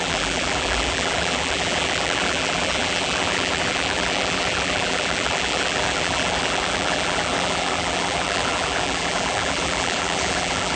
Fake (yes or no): yes